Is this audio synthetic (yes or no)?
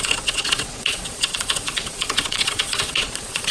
yes